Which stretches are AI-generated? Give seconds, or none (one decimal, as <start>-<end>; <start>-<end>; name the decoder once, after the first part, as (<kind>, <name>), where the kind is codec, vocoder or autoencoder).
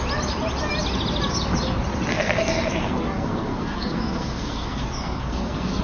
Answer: 2.1-5.8 (codec, SNAC)